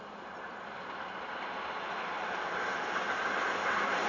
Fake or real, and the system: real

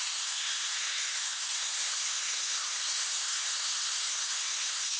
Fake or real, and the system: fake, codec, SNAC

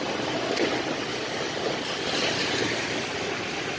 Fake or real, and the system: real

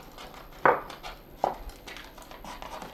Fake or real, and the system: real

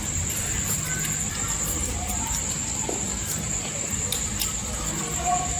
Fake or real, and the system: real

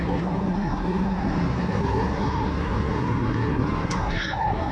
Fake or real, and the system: fake, codec, SNAC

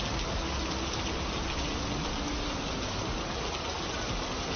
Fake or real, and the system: real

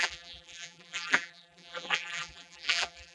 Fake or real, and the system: fake, vocoder, BigVGAN v2